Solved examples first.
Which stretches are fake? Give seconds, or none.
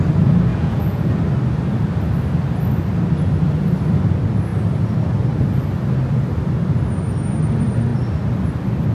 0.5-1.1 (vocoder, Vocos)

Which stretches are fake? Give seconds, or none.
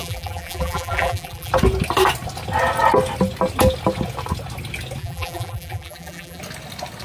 0.0-1.5 (vocoder, BigVGAN v2); 5.0-6.4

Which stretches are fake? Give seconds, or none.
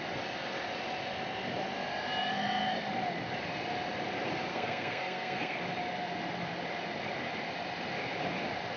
4.5-5.6 (codec, SNAC)